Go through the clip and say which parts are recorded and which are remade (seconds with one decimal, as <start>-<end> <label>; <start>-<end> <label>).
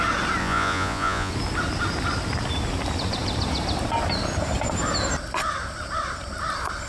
0.0-0.4 recorded; 0.4-1.3 remade; 1.3-6.9 recorded